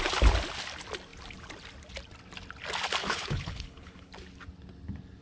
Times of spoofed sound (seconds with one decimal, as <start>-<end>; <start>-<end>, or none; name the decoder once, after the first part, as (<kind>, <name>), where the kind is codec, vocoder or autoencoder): 3.0-4.1 (codec, HILCodec)